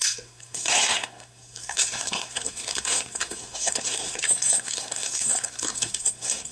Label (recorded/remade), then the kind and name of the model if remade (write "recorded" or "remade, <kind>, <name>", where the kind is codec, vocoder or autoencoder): remade, codec, SNAC